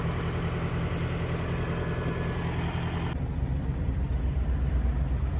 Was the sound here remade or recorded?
recorded